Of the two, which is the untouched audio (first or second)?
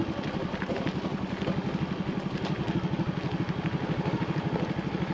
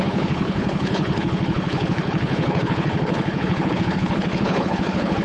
first